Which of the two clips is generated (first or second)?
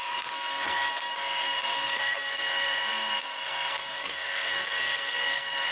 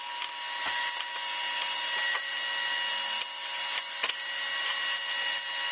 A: first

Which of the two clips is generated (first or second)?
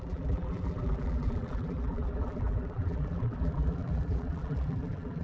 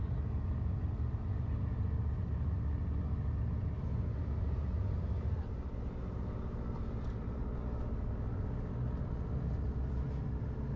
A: first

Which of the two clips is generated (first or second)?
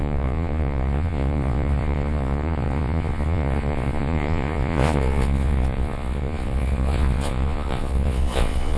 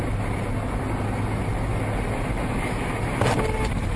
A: first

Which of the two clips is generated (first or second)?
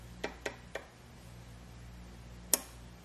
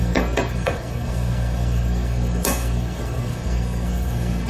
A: second